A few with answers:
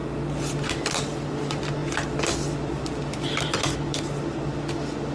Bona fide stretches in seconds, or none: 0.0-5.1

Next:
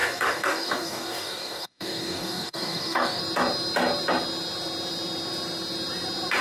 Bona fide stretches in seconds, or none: 3.2-6.4

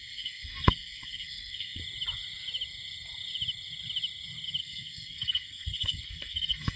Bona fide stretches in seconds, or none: 1.8-4.6

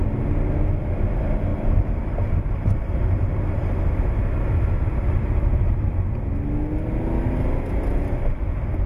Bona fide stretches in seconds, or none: 0.0-1.5; 5.6-8.9

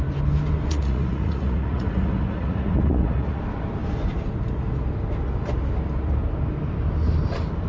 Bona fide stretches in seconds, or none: 0.0-0.7; 3.4-7.7

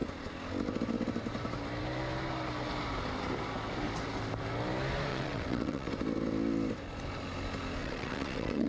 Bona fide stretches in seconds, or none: 0.0-5.1; 5.9-7.8

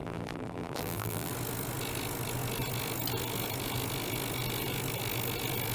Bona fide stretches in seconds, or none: 1.3-5.7